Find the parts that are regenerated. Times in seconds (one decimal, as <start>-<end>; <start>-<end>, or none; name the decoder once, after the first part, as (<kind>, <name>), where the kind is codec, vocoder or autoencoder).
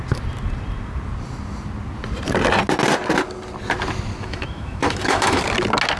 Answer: 4.2-5.4 (autoencoder, DAC-VAE)